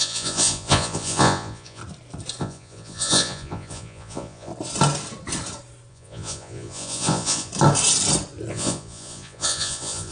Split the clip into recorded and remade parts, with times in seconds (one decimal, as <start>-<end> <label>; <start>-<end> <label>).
0.0-1.8 remade; 1.8-2.4 recorded; 2.4-4.5 remade; 4.5-5.9 recorded; 5.9-7.5 remade; 7.5-8.5 recorded; 8.5-10.1 remade